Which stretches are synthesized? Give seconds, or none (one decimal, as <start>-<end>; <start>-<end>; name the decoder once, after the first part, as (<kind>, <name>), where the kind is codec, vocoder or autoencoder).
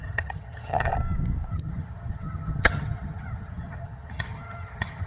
0.0-0.9 (vocoder, HiFi-GAN); 1.5-5.1